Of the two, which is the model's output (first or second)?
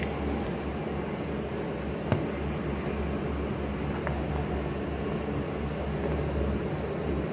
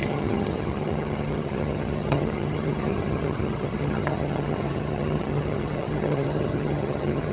second